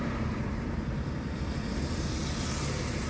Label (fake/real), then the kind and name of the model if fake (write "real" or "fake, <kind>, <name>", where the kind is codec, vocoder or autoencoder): fake, vocoder, BigVGAN v2